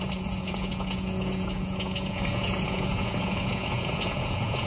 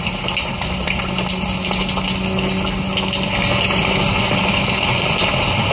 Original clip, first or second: second